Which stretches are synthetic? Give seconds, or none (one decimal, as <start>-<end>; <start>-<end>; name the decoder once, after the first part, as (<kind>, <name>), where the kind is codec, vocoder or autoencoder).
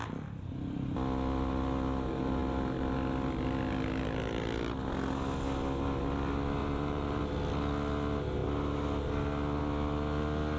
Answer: 6.6-7.2 (vocoder, BigVGAN v2)